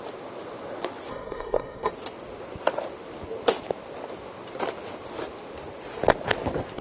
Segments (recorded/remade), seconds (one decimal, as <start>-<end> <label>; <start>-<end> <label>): 0.0-1.1 recorded; 1.1-1.9 remade; 1.9-6.8 recorded